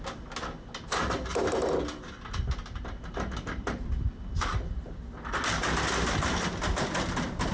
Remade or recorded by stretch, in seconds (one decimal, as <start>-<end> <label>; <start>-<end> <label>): 0.0-1.3 recorded; 1.3-3.9 remade; 3.9-7.5 recorded